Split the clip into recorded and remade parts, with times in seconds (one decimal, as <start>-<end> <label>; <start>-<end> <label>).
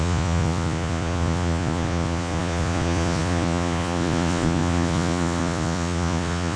0.0-6.6 remade